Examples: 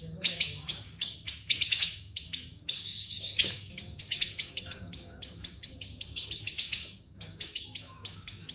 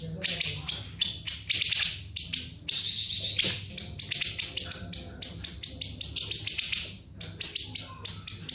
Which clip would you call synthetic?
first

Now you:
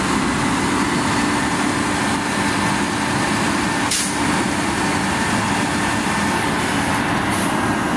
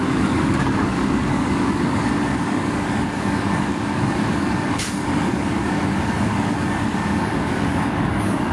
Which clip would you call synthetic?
second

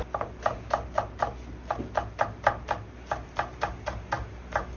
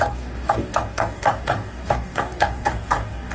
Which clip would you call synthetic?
second